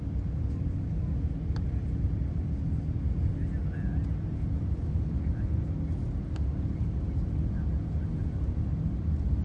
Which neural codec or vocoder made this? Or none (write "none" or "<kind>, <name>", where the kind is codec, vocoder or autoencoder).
none